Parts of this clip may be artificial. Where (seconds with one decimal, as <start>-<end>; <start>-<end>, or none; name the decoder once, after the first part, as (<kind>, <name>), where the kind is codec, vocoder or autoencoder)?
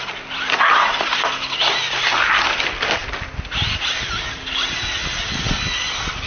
none